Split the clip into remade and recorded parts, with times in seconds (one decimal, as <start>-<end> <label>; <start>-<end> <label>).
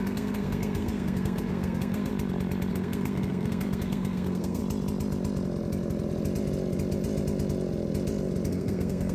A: 0.0-2.1 remade; 2.1-2.7 recorded; 2.7-4.6 remade; 4.6-8.5 recorded; 8.5-9.1 remade